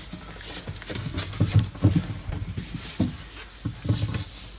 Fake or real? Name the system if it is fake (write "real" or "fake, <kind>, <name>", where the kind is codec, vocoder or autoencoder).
real